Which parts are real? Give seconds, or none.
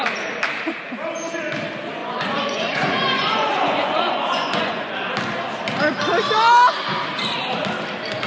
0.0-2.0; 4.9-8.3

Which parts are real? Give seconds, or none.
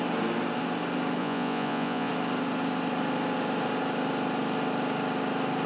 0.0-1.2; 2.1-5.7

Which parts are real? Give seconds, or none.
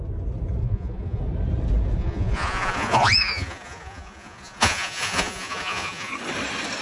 0.0-0.6; 1.2-2.0; 6.1-6.8